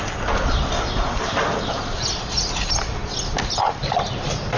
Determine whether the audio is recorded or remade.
recorded